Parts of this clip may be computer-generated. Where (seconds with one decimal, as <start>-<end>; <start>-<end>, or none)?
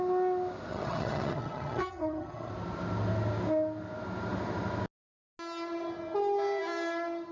0.7-2.5